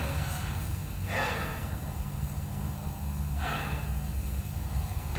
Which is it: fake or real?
fake